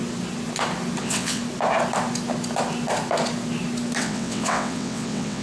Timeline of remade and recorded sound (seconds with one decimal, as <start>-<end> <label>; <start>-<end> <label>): 0.0-1.0 recorded; 1.0-1.4 remade; 1.4-4.0 recorded; 4.0-5.4 remade